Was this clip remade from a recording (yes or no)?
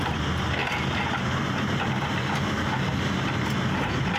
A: no